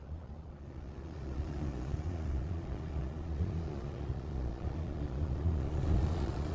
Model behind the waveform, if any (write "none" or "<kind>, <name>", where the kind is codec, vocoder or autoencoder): vocoder, Vocos